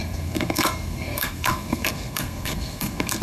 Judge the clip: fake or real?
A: fake